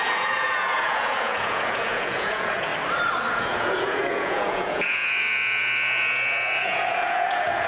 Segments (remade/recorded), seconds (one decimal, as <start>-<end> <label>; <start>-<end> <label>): 0.0-2.7 remade; 2.7-3.3 recorded; 3.3-7.7 remade